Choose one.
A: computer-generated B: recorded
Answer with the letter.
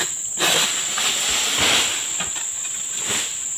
B